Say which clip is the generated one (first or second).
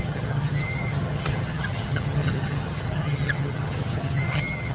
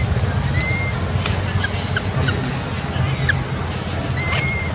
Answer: first